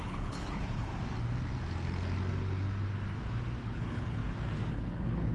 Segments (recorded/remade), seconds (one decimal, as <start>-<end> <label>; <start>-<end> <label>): 0.0-0.9 remade; 0.9-3.6 recorded; 3.6-4.2 remade; 4.2-4.7 recorded; 4.7-5.3 remade